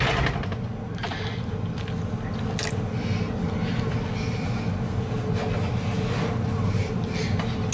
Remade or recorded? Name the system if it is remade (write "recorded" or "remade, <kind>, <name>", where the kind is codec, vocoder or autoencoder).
recorded